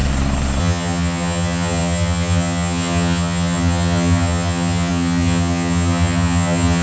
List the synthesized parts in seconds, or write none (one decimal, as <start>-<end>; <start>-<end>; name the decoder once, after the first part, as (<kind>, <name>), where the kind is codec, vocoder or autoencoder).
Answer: 0.6-6.8 (vocoder, HiFi-GAN)